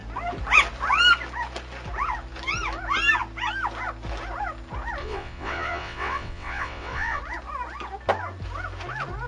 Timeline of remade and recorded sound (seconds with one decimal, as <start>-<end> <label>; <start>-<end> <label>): 0.0-5.0 recorded; 5.0-7.2 remade; 7.2-9.3 recorded